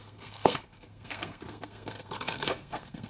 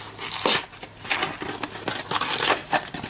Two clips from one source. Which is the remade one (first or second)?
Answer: first